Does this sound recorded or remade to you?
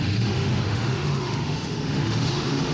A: remade